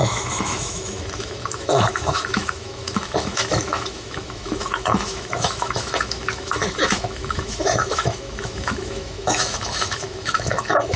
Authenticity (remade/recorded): remade